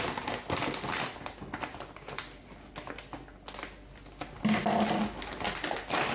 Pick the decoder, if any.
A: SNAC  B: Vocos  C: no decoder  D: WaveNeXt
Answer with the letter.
C